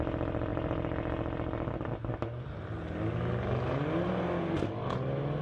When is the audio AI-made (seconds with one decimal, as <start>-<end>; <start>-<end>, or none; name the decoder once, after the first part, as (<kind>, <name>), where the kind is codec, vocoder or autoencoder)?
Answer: none